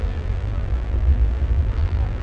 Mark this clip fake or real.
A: fake